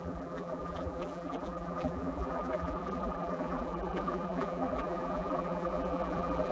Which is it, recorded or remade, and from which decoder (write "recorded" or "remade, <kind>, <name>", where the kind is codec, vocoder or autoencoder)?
remade, vocoder, BigVGAN v2